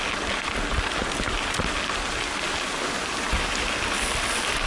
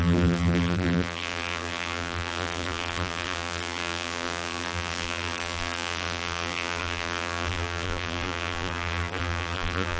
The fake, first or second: second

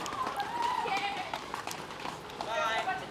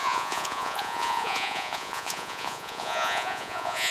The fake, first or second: second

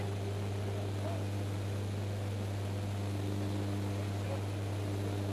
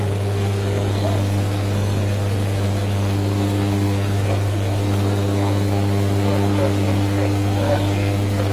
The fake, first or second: second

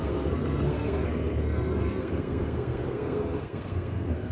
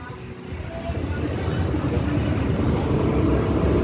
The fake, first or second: first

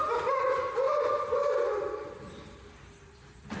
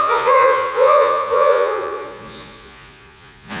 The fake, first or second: second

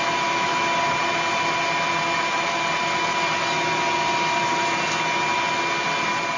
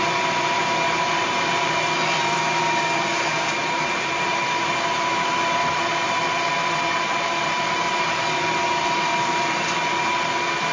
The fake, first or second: second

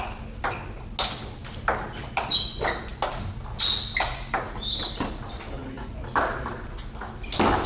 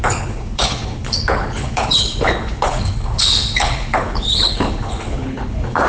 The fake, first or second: second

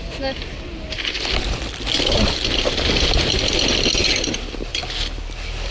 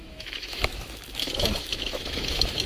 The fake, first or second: second